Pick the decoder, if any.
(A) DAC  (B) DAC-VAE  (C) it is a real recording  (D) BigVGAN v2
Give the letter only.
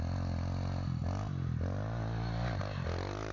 C